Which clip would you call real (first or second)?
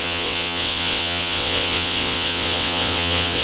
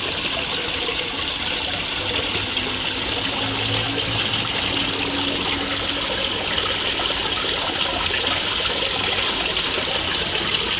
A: second